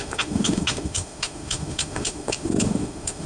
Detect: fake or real fake